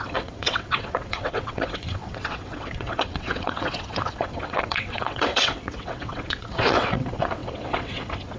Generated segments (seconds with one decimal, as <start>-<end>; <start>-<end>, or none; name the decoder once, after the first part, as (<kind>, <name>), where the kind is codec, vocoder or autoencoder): 0.0-8.4 (vocoder, WaveNeXt)